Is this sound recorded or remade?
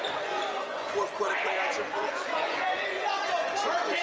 remade